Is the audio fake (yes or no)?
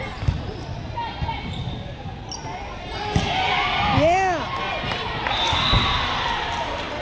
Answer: no